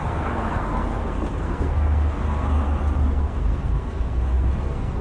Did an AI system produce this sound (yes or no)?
yes